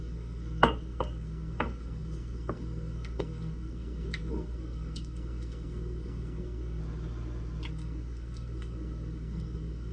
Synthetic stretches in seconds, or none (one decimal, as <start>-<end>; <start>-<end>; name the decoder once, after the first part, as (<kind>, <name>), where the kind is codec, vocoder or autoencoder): 0.0-6.8 (codec, SNAC); 7.7-9.9